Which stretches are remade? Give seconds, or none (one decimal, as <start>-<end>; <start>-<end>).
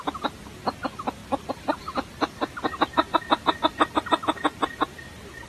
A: none